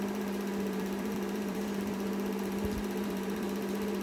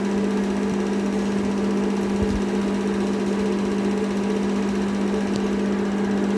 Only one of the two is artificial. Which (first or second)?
first